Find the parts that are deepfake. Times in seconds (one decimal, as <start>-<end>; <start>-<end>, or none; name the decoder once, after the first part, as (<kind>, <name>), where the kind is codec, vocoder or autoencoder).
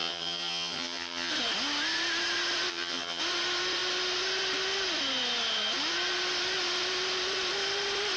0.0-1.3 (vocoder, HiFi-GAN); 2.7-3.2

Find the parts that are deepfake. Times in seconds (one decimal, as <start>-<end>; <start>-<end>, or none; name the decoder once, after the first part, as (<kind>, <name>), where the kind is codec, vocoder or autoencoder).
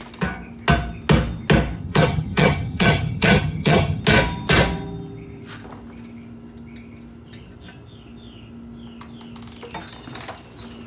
1.8-4.0 (vocoder, HiFi-GAN)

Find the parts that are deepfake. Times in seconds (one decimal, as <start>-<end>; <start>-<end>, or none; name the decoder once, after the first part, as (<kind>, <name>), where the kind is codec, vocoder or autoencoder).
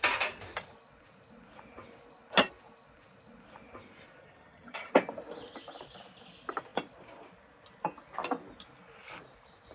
4.2-4.9 (vocoder, HiFi-GAN)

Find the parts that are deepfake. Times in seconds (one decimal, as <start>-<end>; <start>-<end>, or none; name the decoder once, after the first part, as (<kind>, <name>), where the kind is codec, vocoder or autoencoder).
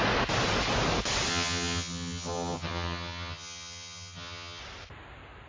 1.3-4.6 (vocoder, HiFi-GAN)